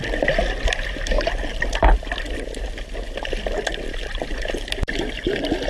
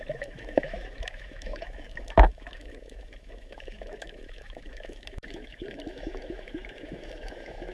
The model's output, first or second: second